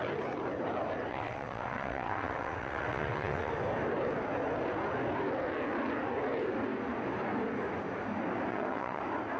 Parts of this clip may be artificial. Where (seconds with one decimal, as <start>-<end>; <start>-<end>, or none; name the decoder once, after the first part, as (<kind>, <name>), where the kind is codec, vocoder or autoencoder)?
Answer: 1.1-3.5 (vocoder, WaveNeXt); 8.5-9.0

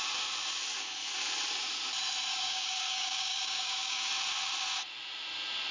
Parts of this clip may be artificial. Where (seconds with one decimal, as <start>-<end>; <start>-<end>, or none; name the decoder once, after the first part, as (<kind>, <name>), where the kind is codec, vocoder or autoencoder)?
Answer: 2.3-4.1 (codec, DAC)

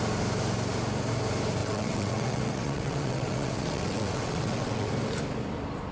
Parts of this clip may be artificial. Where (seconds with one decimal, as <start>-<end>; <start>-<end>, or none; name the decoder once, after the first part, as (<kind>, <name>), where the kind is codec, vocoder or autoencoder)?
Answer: 1.6-4.9 (vocoder, WaveNeXt)

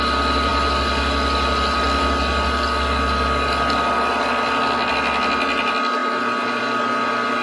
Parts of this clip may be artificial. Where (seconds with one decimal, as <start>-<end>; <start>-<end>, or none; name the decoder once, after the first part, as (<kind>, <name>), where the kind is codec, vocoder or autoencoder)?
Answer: none

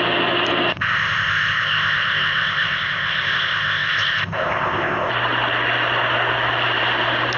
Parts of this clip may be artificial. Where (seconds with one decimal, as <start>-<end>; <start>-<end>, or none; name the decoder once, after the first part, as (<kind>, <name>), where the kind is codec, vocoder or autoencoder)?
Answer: 0.7-5.1 (codec, ZipCodec)

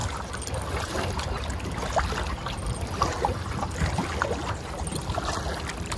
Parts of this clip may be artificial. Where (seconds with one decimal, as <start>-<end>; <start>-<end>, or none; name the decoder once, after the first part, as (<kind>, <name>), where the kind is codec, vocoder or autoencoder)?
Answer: none